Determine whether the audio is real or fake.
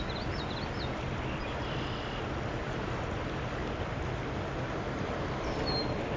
real